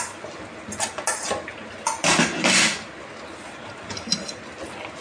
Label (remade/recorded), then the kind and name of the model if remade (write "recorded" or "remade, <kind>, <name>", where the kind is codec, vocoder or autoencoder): recorded